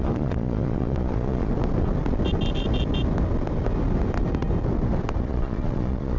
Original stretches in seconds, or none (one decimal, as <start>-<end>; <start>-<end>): 1.5-5.2